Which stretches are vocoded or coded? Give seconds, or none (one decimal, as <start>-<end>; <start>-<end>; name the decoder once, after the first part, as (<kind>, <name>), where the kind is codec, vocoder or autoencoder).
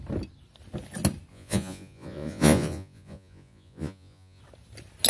1.3-4.4 (vocoder, Vocos)